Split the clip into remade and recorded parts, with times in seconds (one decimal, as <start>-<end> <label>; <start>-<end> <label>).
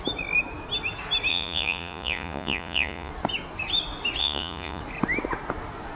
0.0-1.3 recorded; 1.3-3.1 remade; 3.1-4.2 recorded; 4.2-4.8 remade; 4.8-6.0 recorded